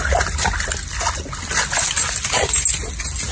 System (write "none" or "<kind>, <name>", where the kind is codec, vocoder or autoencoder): none